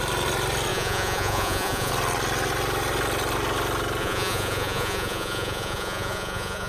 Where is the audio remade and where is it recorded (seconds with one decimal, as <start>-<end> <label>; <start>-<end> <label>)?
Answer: 0.0-0.7 recorded; 0.7-1.9 remade; 1.9-4.0 recorded; 4.0-6.7 remade

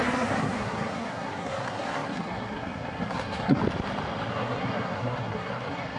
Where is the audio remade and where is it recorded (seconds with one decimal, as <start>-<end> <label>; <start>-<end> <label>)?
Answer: 0.0-3.6 remade; 3.6-4.3 recorded; 4.3-6.0 remade

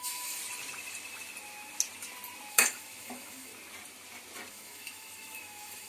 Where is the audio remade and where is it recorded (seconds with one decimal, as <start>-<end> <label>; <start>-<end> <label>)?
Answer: 0.0-0.4 remade; 0.4-2.5 recorded; 2.5-3.5 remade; 3.5-4.5 recorded; 4.5-5.9 remade

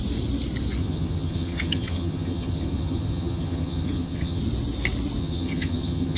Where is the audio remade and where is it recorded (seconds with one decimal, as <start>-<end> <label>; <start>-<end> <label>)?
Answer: 0.0-0.8 recorded; 0.8-4.4 remade; 4.4-5.2 recorded; 5.2-6.2 remade

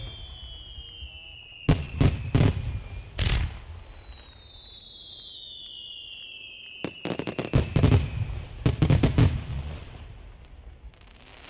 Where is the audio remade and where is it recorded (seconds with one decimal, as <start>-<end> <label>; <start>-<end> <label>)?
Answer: 0.0-1.5 recorded; 1.5-2.0 remade; 2.0-9.5 recorded; 9.5-10.0 remade; 10.0-11.5 recorded

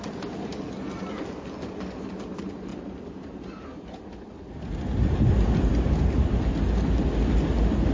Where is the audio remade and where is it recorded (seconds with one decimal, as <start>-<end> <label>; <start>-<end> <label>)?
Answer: 0.0-2.7 recorded; 2.7-4.0 remade; 4.0-7.9 recorded

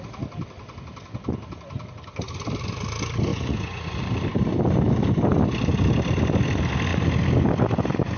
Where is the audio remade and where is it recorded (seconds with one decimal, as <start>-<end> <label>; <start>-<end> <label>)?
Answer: 0.0-3.3 recorded; 3.3-4.0 remade; 4.0-8.2 recorded

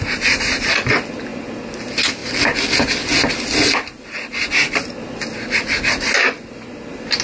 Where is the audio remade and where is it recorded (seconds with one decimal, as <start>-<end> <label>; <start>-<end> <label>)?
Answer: 0.0-7.2 recorded